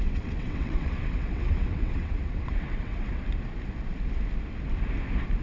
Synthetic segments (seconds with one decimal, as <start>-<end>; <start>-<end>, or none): 0.0-3.2